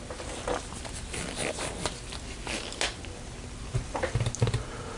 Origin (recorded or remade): recorded